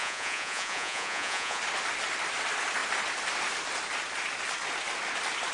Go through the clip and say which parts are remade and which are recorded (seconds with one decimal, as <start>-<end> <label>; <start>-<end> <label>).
0.0-1.6 remade; 1.6-5.5 recorded